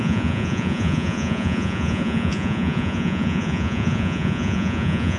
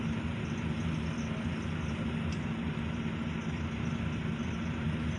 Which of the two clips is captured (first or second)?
second